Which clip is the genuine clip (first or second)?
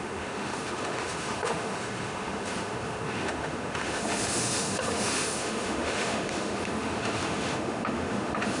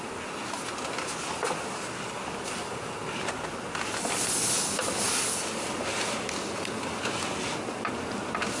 second